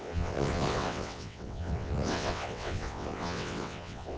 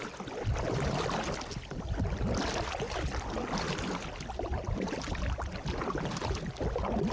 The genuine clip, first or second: second